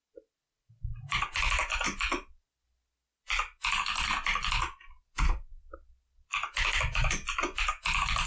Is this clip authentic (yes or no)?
yes